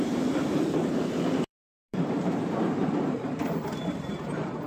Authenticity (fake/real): fake